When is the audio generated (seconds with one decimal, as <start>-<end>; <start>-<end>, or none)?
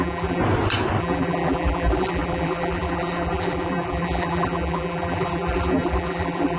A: 0.0-0.4; 1.0-6.6